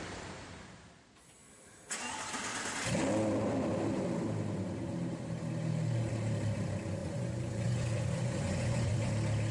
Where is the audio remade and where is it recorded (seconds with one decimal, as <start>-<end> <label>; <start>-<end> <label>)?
0.0-7.0 recorded; 7.0-9.1 remade; 9.1-9.5 recorded